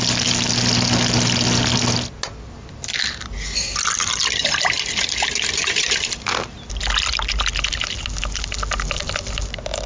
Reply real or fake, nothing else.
real